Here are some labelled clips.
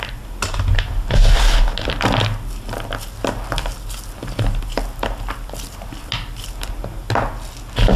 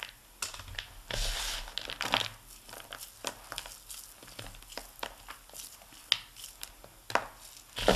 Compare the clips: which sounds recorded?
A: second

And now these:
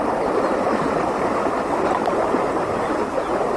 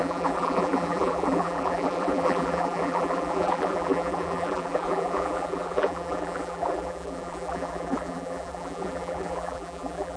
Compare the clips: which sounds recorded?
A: first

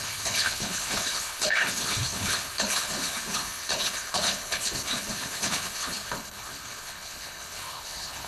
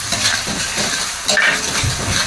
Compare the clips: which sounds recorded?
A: second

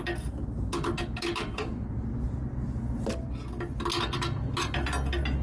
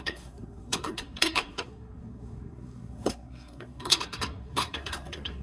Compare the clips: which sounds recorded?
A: first